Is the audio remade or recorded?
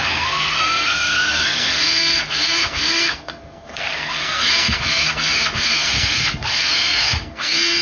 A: remade